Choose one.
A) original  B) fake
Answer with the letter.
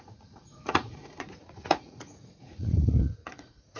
B